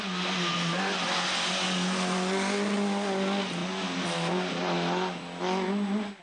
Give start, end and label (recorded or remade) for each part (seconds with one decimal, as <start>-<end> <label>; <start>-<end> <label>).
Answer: 0.0-6.2 recorded